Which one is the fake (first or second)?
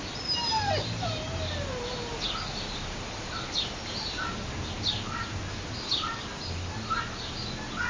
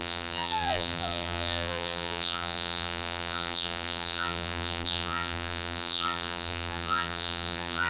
second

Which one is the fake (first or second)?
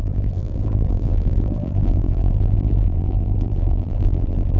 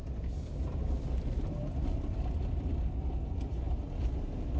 first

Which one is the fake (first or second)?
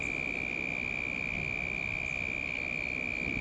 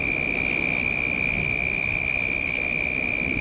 second